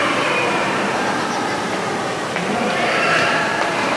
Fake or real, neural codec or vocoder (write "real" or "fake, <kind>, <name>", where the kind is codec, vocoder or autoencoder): fake, vocoder, BigVGAN v2